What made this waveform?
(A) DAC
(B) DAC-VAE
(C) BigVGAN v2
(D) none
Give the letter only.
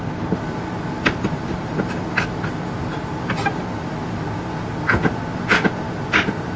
D